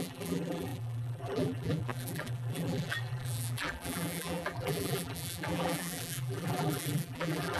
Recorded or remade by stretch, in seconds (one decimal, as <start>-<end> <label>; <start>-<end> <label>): 0.0-7.6 remade